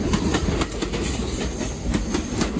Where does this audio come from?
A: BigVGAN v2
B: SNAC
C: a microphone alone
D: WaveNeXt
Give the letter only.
C